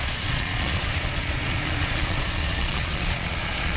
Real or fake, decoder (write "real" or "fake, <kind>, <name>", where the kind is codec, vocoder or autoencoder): fake, vocoder, Vocos